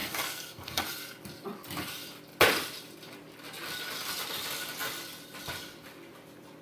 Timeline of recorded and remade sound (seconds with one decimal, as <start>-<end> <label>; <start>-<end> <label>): 0.0-0.8 remade; 0.8-6.6 recorded